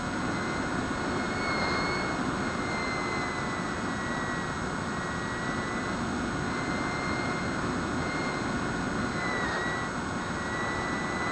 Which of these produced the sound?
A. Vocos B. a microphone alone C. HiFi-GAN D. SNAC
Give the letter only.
B